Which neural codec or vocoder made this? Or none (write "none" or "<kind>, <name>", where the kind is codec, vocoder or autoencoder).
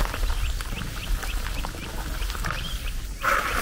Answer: none